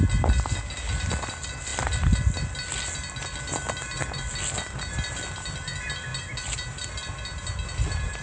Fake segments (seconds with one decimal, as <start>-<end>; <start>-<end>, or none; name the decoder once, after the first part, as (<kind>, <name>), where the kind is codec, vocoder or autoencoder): none